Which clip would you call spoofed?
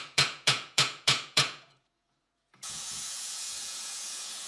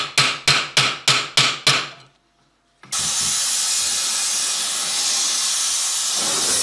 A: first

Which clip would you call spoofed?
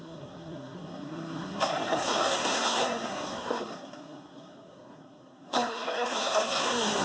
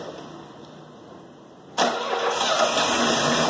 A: first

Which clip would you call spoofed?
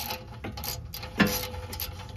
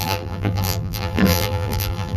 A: second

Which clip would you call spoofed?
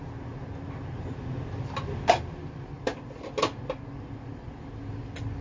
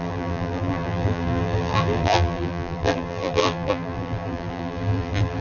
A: second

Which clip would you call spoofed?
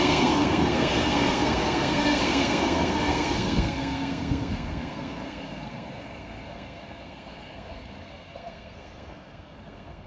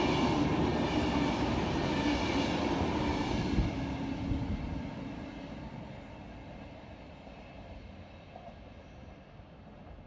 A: first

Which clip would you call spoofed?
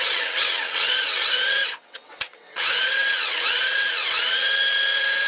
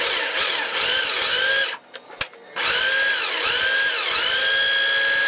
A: first